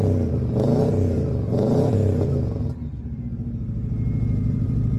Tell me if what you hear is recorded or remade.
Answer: remade